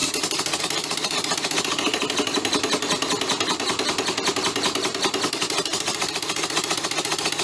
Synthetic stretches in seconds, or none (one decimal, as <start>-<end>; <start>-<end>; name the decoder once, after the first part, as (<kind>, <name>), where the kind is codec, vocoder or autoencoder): none